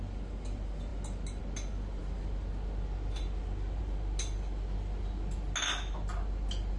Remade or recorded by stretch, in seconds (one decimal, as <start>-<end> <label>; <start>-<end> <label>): 0.0-6.8 recorded